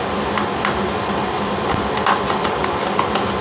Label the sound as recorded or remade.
recorded